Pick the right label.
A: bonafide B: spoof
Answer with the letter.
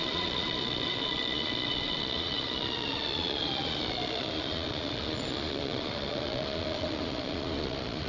B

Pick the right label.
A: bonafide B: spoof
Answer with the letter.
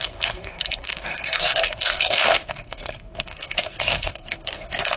B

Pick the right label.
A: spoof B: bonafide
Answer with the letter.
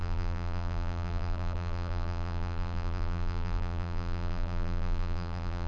A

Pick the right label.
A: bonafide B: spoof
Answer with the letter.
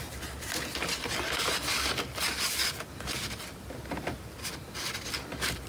A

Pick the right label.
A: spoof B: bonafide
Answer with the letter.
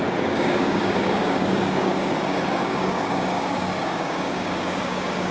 A